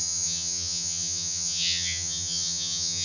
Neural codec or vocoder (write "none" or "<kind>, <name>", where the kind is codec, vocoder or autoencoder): vocoder, HiFi-GAN